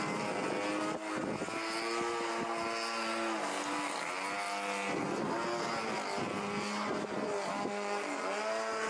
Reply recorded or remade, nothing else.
recorded